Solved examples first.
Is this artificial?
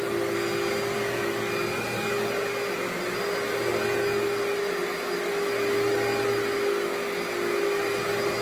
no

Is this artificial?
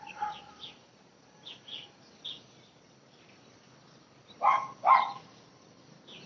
no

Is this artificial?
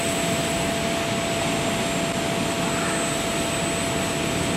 no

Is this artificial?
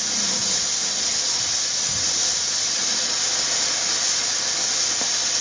no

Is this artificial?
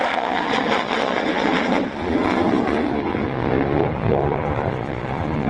yes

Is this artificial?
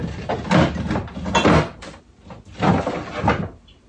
no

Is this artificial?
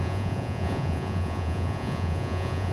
yes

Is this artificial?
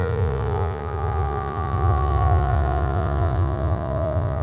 yes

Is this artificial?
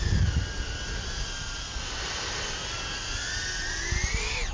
no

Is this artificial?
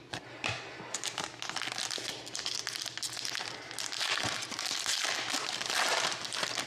no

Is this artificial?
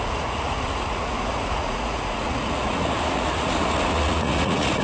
yes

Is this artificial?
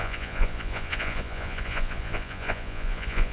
yes